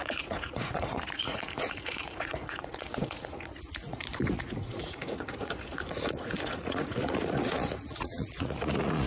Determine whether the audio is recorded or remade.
remade